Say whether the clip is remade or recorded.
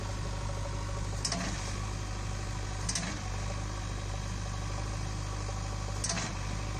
recorded